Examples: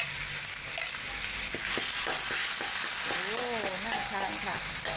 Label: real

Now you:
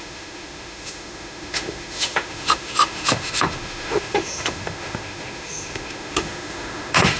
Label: fake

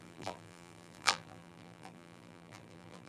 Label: fake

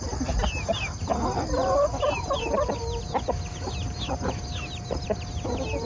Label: real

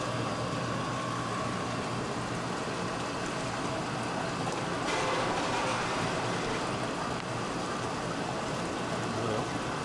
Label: real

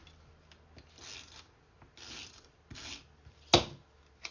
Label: real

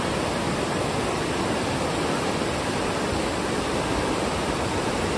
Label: real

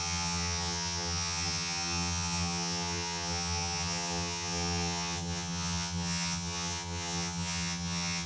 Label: fake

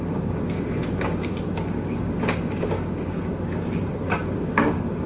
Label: fake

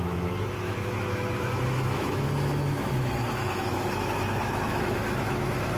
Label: fake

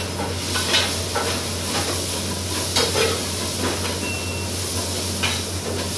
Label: real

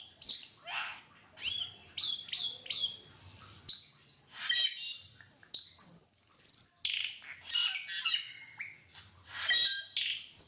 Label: real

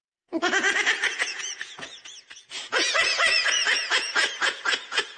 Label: fake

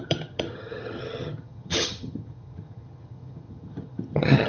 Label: fake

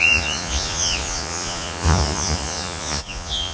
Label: fake